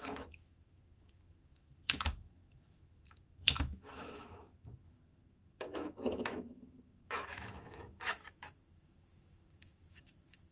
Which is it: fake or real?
fake